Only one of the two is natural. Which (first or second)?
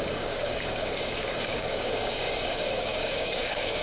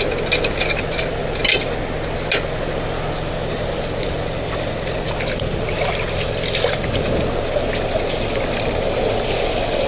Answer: second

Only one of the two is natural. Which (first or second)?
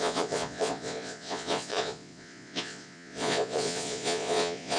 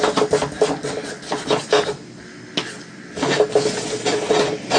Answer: second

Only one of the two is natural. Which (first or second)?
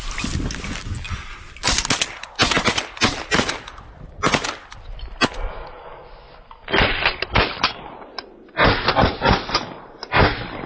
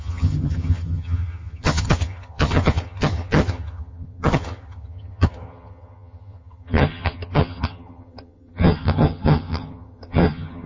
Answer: first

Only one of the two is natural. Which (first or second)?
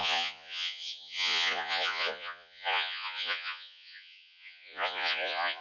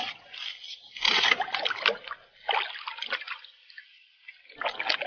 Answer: second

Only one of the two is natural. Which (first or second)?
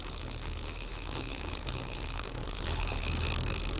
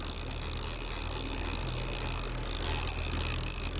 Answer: second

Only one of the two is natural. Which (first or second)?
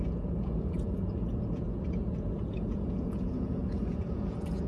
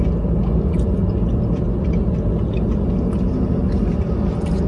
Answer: second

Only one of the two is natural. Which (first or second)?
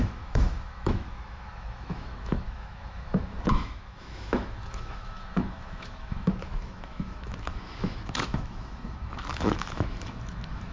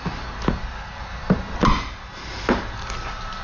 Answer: second